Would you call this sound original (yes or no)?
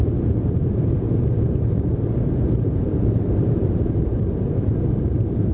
no